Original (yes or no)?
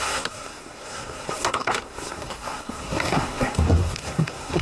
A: no